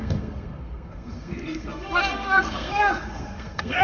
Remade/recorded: remade